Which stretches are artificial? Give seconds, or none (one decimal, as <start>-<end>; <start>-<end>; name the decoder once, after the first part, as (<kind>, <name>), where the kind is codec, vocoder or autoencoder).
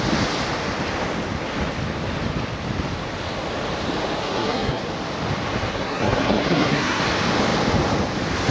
4.2-4.8 (codec, SNAC); 5.7-7.0